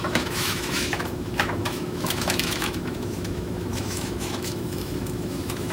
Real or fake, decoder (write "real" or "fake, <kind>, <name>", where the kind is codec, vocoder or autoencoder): fake, autoencoder, DAC-VAE